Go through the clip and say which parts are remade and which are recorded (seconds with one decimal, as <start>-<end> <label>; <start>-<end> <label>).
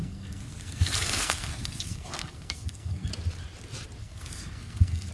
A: 0.0-3.1 remade; 3.1-4.0 recorded; 4.0-5.1 remade